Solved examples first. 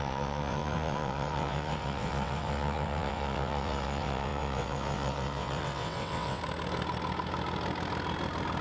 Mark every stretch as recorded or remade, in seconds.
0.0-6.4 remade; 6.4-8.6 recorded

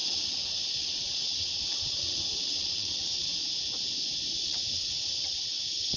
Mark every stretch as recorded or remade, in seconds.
0.0-3.3 remade; 3.3-4.4 recorded; 4.4-6.0 remade

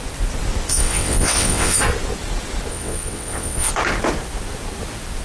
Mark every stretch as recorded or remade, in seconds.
0.0-0.7 recorded; 0.7-1.8 remade; 1.8-2.7 recorded; 2.7-3.7 remade; 3.7-5.2 recorded

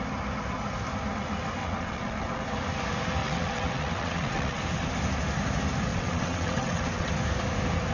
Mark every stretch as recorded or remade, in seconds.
0.0-1.6 recorded; 1.6-2.4 remade; 2.4-3.2 recorded; 3.2-4.6 remade; 4.6-5.9 recorded; 5.9-7.1 remade; 7.1-7.9 recorded

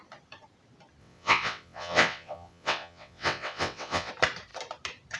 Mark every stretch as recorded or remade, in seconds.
0.0-1.0 recorded; 1.0-4.1 remade; 4.1-5.2 recorded

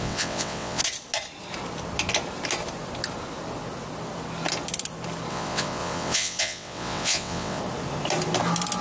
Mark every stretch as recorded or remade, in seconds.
0.0-0.8 remade; 0.8-5.3 recorded; 5.3-7.6 remade; 7.6-8.8 recorded